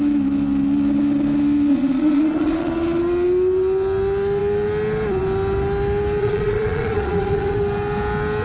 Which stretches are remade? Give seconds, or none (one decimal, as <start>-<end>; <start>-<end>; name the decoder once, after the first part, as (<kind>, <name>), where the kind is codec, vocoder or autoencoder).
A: 1.7-2.7 (vocoder, Vocos); 6.2-7.6